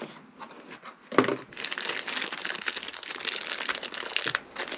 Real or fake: real